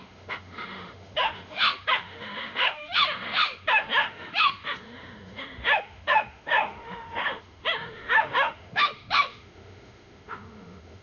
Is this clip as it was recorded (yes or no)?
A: no